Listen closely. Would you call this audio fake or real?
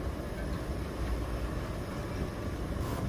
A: real